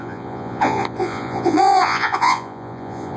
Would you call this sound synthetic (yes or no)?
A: yes